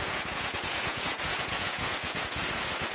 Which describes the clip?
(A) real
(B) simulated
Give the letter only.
B